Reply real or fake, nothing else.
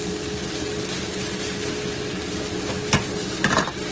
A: real